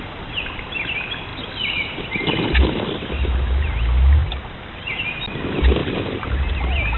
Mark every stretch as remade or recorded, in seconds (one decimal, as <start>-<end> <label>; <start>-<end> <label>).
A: 0.0-4.2 recorded; 4.2-4.9 remade; 4.9-5.8 recorded; 5.8-6.5 remade; 6.5-7.0 recorded